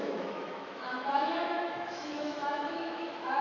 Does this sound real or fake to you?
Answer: fake